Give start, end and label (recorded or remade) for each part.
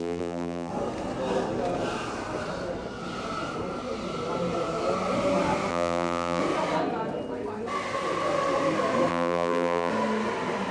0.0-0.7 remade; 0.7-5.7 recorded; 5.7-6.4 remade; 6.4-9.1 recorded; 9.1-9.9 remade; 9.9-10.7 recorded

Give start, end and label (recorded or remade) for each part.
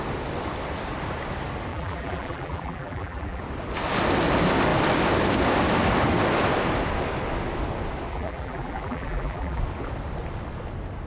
0.0-1.7 recorded; 1.7-3.4 remade; 3.4-8.1 recorded; 8.1-9.6 remade; 9.6-11.1 recorded